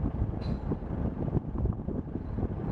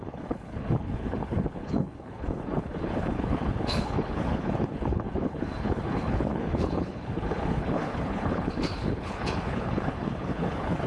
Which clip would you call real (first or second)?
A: first